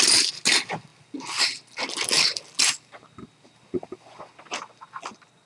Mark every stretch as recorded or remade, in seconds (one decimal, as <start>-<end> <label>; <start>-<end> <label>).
0.0-5.5 recorded